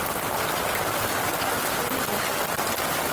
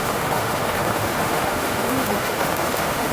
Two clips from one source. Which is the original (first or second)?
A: first